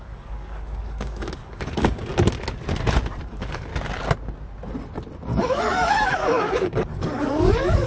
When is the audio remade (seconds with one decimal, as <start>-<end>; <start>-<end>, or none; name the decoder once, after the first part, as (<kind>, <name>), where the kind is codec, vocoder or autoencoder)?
0.0-2.1 (codec, DAC); 3.3-3.7; 5.4-7.9

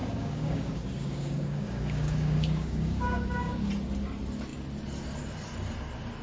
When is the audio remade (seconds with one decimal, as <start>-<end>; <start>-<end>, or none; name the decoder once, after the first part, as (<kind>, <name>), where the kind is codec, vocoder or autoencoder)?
0.0-3.7 (codec, DAC)